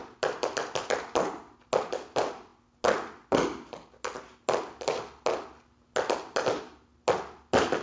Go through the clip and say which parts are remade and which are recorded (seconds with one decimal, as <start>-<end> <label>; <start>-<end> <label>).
0.0-7.8 recorded